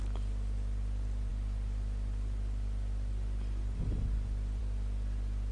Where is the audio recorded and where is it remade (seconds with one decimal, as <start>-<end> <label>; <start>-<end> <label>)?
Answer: 0.0-5.5 recorded